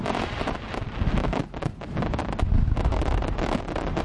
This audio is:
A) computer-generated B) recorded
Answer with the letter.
B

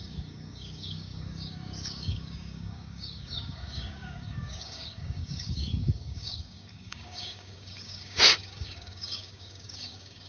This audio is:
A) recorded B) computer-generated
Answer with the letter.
B